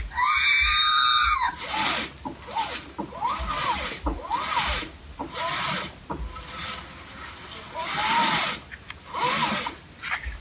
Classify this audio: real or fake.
real